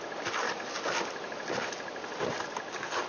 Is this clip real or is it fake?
real